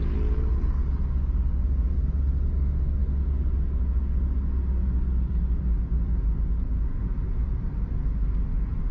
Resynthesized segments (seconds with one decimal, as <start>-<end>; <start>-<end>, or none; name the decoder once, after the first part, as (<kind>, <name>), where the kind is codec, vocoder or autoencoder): none